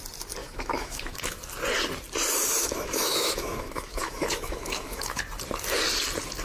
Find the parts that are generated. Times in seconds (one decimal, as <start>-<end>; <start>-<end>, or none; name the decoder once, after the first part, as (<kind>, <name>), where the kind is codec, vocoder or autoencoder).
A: 0.4-1.4 (autoencoder, DAC-VAE); 2.6-5.2